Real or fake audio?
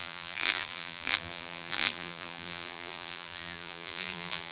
fake